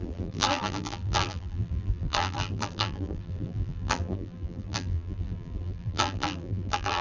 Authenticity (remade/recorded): remade